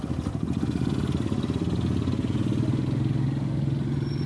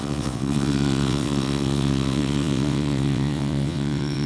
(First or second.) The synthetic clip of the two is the second